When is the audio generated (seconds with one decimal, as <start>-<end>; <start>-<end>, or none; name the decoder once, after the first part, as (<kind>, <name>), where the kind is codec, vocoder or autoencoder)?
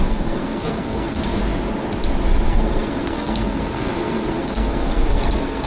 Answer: 0.0-1.4 (codec, SNAC); 2.5-5.7